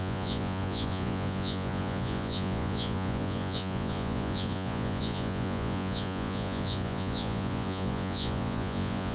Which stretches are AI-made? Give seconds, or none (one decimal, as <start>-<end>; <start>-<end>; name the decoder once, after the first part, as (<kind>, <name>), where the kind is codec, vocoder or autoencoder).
0.0-9.1 (vocoder, Vocos)